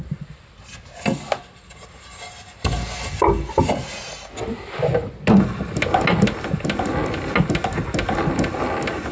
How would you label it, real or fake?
real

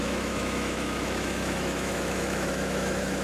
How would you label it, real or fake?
fake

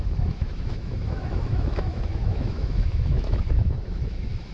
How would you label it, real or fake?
fake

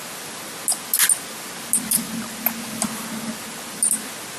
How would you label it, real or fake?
real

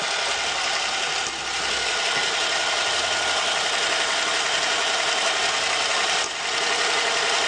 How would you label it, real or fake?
real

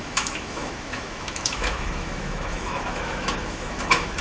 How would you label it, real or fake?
fake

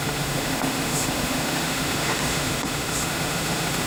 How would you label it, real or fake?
fake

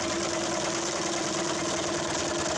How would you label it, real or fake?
real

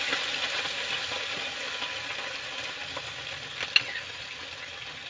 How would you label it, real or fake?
real